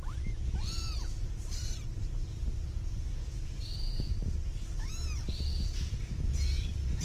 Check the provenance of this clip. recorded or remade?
recorded